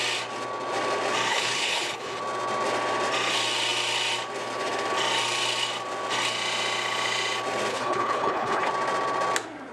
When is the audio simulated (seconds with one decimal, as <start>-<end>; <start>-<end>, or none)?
1.3-2.2; 7.7-8.7

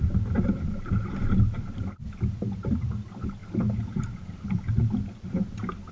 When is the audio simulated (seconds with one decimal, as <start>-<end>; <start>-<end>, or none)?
none

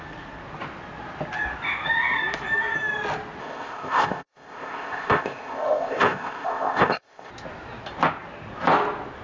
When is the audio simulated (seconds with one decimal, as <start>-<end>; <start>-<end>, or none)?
3.4-7.3

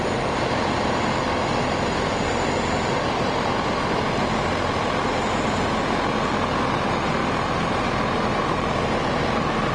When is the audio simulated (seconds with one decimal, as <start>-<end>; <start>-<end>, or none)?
2.1-5.8

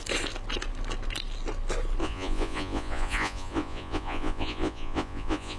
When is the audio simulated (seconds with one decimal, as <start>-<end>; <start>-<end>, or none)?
2.0-5.6